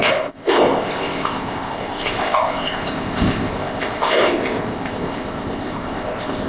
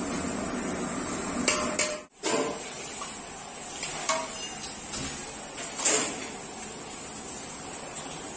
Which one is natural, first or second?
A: second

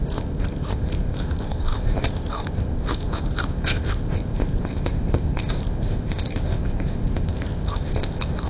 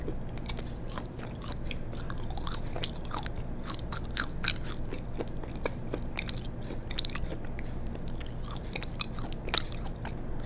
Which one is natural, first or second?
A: second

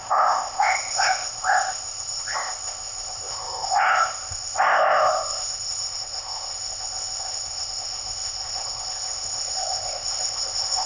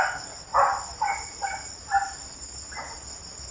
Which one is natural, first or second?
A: second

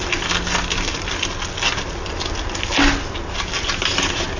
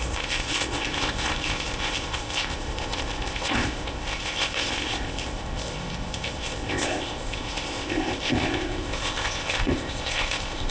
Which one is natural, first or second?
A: first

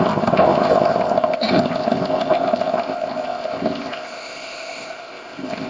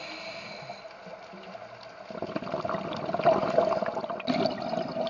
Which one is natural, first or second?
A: second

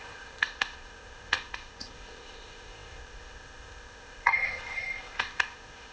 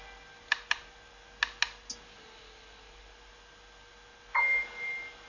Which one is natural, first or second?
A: second